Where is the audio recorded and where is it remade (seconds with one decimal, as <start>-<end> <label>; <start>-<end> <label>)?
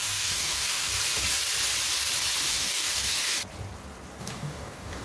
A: 0.0-0.9 remade; 0.9-2.5 recorded; 2.5-3.4 remade; 3.4-4.2 recorded; 4.2-5.0 remade